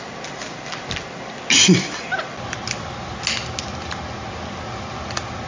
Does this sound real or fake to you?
real